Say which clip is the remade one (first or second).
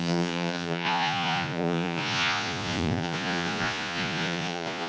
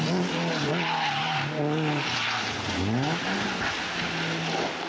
first